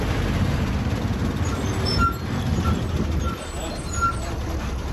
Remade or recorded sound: recorded